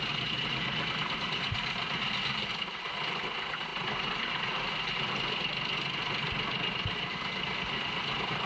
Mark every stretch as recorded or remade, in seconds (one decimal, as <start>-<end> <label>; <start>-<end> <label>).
0.0-8.5 recorded